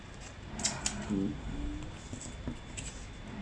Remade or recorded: recorded